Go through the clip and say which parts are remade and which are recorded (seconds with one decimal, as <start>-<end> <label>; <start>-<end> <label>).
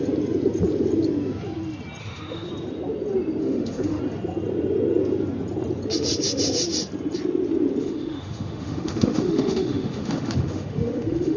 0.0-2.0 recorded; 2.0-2.5 remade; 2.5-3.4 recorded; 3.4-4.0 remade; 4.0-7.8 recorded; 7.8-11.4 remade